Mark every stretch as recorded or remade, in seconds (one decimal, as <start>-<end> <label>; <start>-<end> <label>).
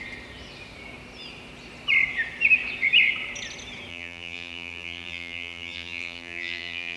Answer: 0.0-3.9 recorded; 3.9-7.0 remade